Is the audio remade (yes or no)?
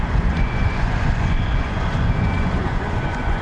yes